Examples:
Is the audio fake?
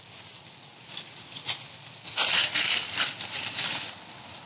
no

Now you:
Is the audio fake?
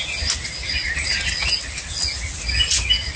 no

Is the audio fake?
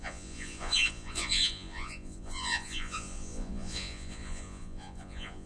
yes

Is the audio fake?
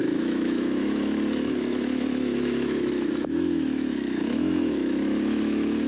yes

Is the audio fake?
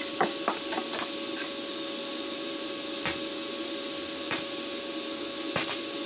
no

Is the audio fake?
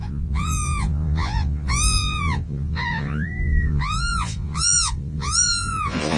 yes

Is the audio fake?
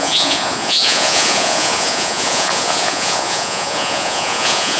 yes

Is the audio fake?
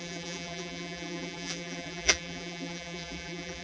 yes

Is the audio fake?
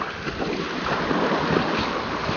no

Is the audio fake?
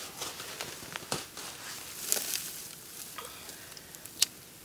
no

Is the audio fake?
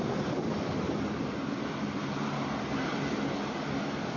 no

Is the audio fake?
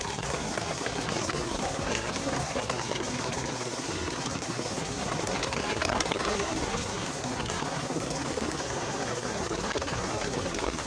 yes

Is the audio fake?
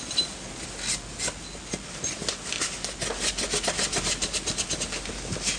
no